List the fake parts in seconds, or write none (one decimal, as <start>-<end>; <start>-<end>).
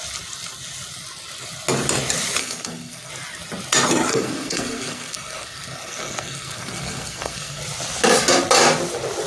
2.4-3.1; 4.1-7.6